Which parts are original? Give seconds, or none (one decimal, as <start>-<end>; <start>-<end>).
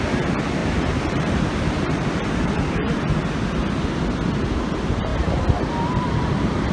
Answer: 0.0-0.6; 3.0-6.7